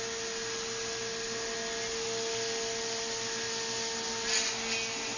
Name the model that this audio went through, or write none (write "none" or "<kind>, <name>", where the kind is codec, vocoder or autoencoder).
none